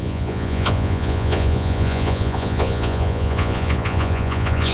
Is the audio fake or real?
fake